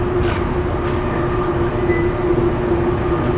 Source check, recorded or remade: recorded